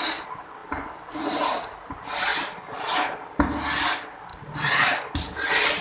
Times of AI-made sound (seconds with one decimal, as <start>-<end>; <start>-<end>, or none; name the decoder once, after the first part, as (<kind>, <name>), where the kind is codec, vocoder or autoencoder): 0.6-1.9 (vocoder, BigVGAN v2); 2.3-3.0